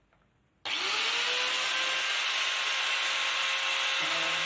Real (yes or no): yes